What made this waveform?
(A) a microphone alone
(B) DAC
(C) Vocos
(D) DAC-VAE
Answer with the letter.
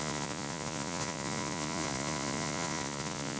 C